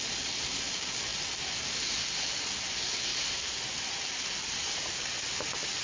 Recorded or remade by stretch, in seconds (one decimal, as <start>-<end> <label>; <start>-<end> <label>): 0.0-3.1 recorded; 3.1-4.2 remade; 4.2-5.8 recorded